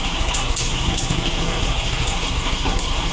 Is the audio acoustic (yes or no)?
no